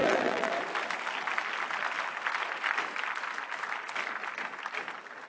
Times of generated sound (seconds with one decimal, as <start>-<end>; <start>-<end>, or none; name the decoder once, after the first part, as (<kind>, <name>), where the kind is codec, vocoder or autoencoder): 0.0-0.5 (vocoder, BigVGAN v2)